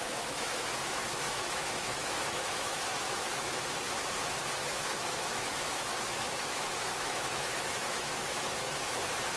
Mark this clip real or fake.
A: fake